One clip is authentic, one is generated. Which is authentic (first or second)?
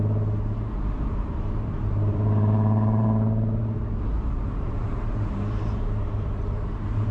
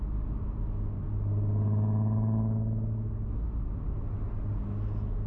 second